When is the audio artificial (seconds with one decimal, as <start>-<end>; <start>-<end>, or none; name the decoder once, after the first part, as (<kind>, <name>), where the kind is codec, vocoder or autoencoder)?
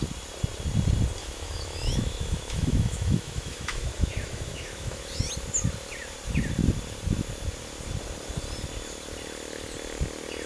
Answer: 1.2-5.3 (autoencoder, DAC-VAE)